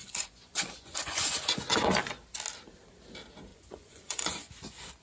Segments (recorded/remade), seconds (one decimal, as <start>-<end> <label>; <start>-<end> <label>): 0.0-1.9 remade; 1.9-3.5 recorded; 3.5-4.5 remade; 4.5-5.0 recorded